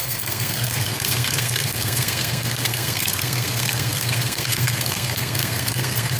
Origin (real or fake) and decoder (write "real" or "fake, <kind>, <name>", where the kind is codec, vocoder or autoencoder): fake, codec, SNAC